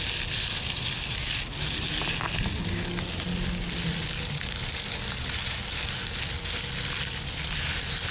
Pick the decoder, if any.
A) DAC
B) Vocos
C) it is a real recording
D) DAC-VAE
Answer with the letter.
C